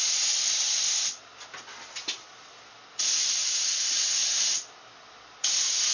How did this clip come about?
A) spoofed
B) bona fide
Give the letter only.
B